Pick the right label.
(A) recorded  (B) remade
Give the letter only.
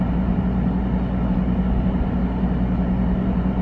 A